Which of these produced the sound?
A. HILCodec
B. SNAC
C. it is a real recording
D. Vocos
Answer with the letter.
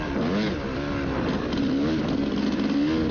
C